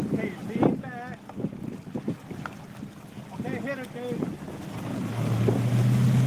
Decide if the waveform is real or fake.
real